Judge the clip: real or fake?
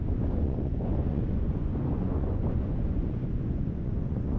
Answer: fake